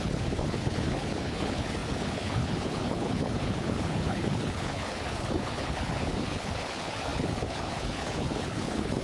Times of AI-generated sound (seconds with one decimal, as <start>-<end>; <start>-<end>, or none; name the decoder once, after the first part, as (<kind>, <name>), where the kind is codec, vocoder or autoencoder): 0.0-9.0 (codec, HILCodec)

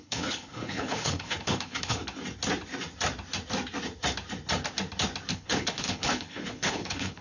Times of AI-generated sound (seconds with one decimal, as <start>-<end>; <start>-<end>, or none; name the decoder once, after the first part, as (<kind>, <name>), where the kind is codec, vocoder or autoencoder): 0.0-2.0 (codec, HILCodec); 5.3-7.2

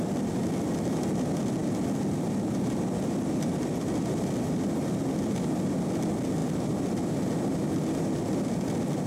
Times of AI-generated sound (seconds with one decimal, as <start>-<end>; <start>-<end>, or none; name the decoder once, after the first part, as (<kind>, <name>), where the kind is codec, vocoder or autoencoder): none

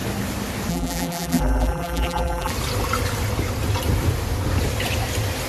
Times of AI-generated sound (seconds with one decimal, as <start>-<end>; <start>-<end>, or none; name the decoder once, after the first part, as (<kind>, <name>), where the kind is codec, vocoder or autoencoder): 0.7-2.5 (vocoder, BigVGAN v2)

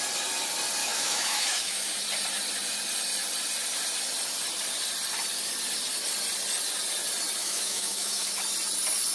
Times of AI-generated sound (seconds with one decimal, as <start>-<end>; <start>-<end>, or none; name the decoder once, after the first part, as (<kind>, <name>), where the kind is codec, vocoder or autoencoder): 0.8-1.9 (autoencoder, DAC-VAE); 7.4-8.4

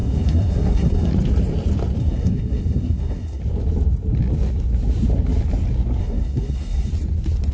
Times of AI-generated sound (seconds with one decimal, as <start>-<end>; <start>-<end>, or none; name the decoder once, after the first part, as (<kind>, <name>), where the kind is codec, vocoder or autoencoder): 0.0-1.1 (codec, SNAC); 2.0-3.4; 6.0-6.9

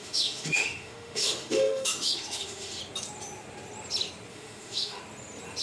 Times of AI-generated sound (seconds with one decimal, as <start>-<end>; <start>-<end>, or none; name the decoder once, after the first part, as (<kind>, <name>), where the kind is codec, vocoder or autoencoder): 0.0-2.8 (autoencoder, DAC-VAE); 4.3-5.0